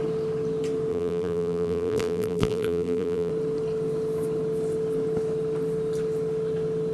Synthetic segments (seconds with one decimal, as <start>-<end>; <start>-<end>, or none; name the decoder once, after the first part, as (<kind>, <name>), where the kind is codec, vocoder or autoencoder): 0.9-3.3 (vocoder, BigVGAN v2)